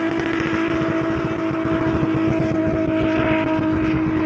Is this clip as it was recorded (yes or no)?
yes